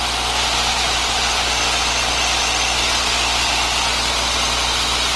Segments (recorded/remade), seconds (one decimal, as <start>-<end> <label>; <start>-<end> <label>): 0.0-5.2 recorded